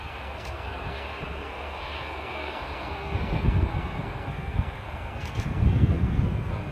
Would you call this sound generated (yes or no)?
yes